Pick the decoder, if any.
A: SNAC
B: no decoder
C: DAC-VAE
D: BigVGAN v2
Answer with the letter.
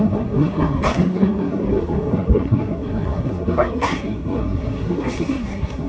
A